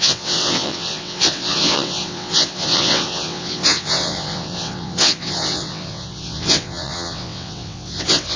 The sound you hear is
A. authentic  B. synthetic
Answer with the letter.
B